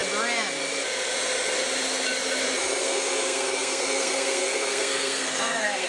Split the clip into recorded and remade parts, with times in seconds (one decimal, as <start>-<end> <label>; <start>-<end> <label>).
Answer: 0.0-2.8 recorded; 2.8-5.9 remade